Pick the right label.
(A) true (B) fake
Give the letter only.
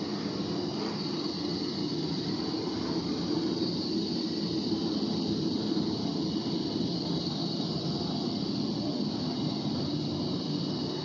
A